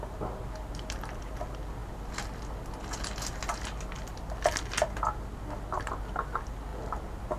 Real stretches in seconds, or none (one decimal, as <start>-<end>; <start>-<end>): 0.0-7.4